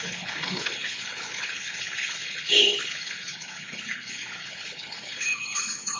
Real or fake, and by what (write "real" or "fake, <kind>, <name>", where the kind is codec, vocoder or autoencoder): fake, codec, HILCodec